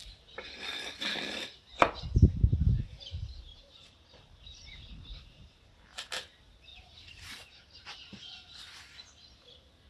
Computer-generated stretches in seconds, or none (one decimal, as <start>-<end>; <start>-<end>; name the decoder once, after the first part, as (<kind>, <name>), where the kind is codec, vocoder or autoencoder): 2.2-2.8 (vocoder, BigVGAN v2); 3.5-5.6; 6.7-8.2